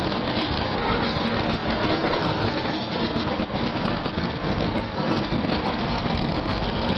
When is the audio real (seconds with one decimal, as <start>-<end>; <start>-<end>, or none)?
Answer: none